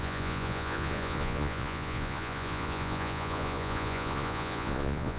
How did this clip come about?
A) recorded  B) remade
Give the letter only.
B